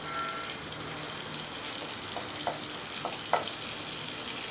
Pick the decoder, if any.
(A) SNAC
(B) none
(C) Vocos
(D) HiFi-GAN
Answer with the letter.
B